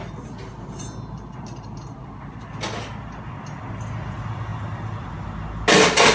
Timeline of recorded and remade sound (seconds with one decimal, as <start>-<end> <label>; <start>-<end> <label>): 0.0-6.1 recorded